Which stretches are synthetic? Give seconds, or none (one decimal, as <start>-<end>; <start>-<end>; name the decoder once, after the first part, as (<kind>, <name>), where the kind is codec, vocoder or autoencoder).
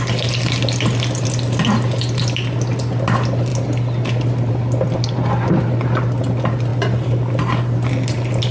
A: none